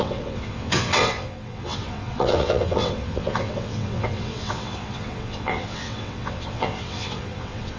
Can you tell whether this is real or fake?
fake